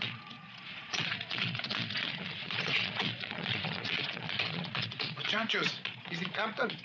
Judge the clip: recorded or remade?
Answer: remade